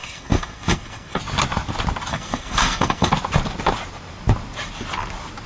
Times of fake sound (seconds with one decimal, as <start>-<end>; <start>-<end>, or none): 0.0-1.2; 2.1-3.1